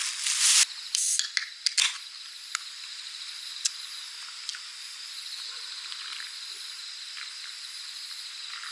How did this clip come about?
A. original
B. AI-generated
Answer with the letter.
A